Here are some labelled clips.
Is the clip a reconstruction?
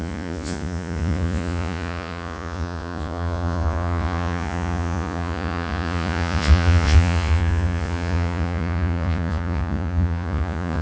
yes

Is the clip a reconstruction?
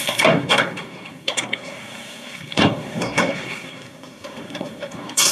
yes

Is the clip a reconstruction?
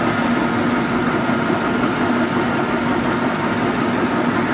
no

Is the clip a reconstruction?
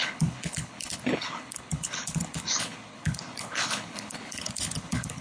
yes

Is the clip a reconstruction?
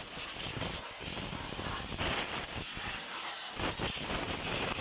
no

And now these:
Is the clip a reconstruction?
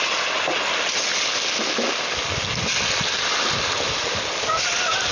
no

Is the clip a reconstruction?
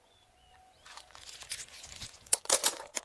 yes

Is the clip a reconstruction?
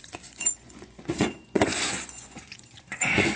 yes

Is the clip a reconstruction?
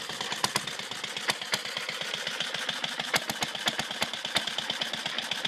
no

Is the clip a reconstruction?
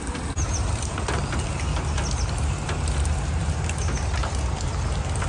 no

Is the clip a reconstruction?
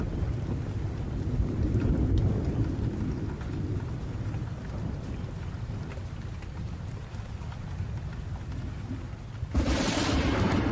no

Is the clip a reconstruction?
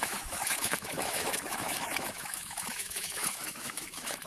yes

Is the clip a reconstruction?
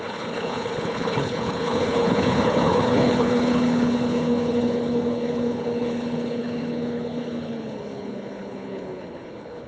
yes